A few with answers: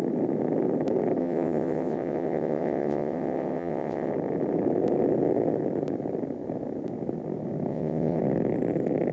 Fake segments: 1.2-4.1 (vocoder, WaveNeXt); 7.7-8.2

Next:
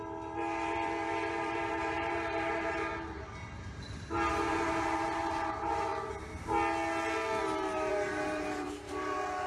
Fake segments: 0.0-2.9 (vocoder, BigVGAN v2); 4.3-5.9; 7.4-9.5

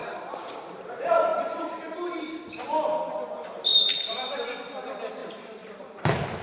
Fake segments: 0.0-0.9 (vocoder, BigVGAN v2); 1.3-2.4; 3.7-4.7; 5.2-5.8